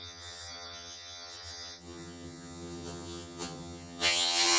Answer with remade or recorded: remade